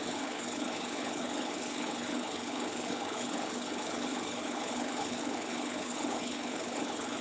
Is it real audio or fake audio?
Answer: fake